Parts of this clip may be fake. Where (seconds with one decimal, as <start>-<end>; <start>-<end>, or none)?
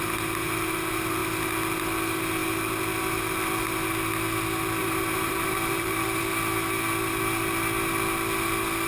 4.8-6.2